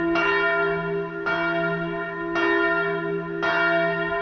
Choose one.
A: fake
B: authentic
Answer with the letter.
B